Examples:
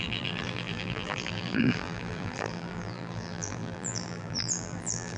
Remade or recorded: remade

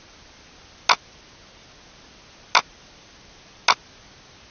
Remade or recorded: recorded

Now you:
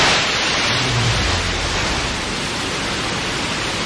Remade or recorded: recorded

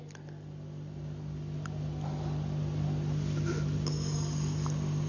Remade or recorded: recorded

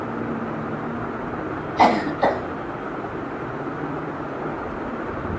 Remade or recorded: recorded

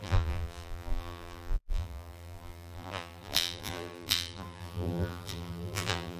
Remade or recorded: remade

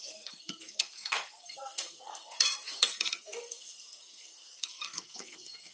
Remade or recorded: remade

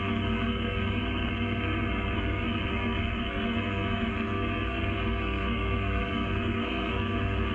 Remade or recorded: remade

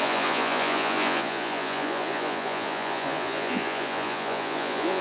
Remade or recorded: remade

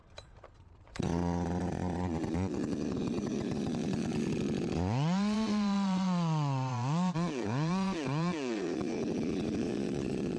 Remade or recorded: remade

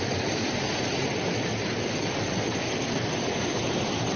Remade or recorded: recorded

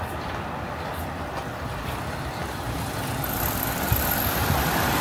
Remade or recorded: remade